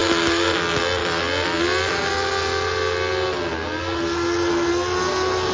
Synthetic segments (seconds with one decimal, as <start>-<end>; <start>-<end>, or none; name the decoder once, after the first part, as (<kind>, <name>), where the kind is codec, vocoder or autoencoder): 0.0-0.6 (autoencoder, DAC-VAE)